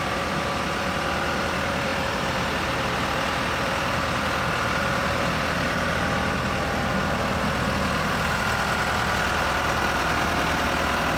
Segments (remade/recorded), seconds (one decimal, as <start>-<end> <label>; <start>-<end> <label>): 0.0-11.2 recorded